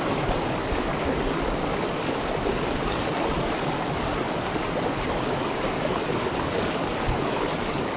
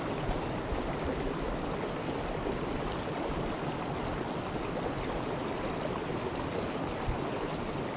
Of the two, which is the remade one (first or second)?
first